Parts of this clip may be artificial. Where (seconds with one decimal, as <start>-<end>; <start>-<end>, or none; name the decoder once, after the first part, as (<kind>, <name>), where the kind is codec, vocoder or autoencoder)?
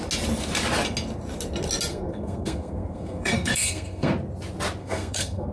1.9-4.1 (codec, SNAC); 4.8-5.5